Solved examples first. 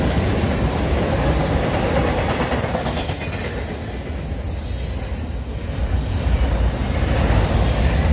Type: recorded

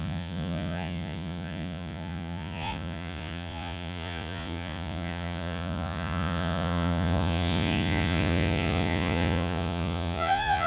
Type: remade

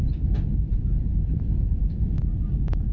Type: recorded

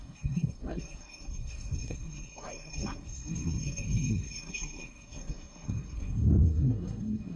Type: remade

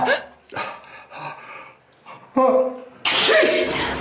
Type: recorded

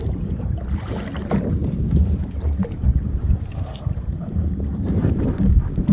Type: remade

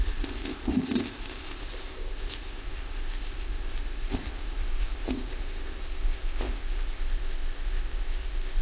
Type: remade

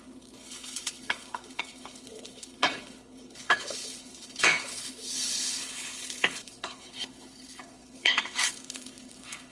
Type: remade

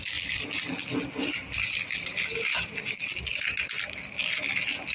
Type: recorded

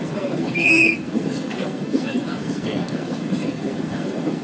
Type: remade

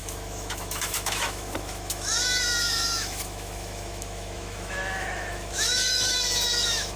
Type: remade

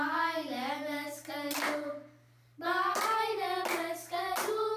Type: recorded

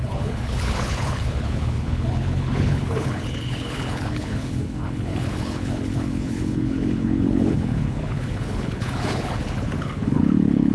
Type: remade